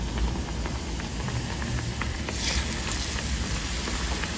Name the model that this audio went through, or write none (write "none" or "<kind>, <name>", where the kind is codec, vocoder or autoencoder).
none